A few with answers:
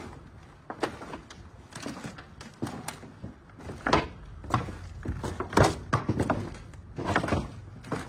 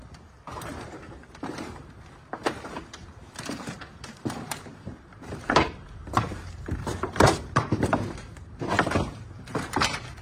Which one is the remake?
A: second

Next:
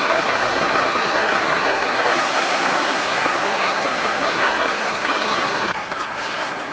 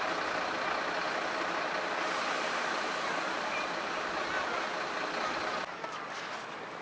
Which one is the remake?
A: first